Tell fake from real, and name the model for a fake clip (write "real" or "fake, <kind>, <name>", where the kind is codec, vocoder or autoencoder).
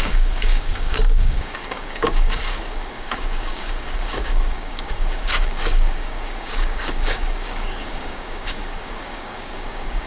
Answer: fake, codec, DAC